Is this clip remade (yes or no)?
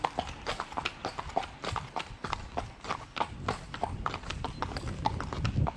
no